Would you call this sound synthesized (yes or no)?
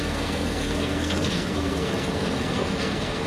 yes